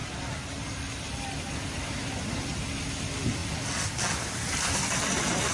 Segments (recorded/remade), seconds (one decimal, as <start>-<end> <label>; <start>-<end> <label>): 0.0-5.5 recorded